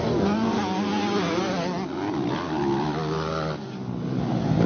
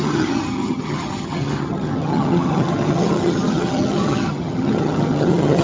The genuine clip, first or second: first